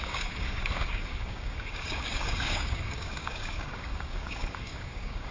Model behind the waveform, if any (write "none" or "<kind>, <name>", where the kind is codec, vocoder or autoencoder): codec, DAC